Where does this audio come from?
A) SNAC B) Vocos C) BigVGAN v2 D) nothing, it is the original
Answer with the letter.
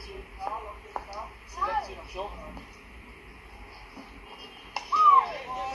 D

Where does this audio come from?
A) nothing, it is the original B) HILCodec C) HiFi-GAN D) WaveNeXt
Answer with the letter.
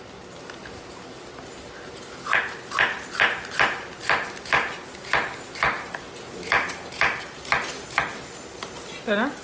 A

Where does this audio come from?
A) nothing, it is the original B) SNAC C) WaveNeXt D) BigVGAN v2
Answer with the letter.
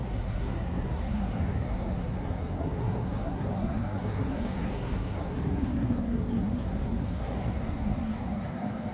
B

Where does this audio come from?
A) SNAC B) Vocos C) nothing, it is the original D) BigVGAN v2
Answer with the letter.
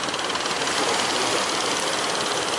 C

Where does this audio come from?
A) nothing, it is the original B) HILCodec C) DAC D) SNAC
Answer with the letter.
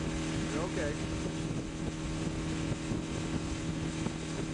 A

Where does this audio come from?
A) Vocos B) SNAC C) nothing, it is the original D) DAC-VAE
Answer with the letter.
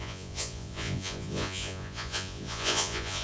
A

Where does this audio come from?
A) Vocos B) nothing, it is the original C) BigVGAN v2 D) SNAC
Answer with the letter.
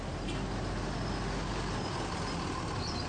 B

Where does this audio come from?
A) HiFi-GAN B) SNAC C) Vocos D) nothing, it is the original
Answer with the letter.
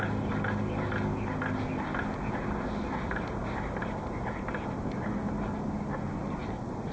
D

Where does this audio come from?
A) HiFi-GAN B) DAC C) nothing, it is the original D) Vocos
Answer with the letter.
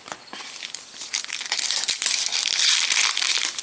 C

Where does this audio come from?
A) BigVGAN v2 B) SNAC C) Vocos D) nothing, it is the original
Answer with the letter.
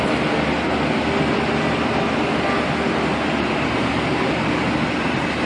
D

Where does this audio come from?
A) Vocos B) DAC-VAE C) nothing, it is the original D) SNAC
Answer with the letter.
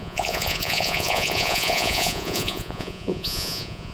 A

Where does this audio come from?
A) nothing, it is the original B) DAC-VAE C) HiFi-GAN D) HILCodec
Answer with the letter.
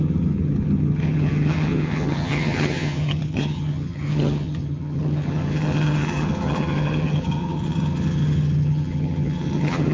C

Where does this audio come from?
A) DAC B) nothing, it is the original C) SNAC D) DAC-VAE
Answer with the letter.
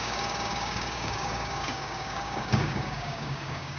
A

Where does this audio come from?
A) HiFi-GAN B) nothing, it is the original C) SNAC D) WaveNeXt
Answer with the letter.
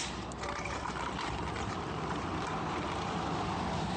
B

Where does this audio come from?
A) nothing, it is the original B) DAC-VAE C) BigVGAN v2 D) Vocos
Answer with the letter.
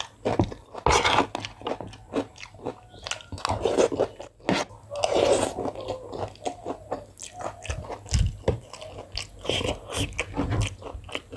A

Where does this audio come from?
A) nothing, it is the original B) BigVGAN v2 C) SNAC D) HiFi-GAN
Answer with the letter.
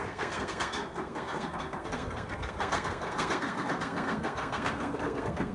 C